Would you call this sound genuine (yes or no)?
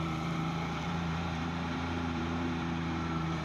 no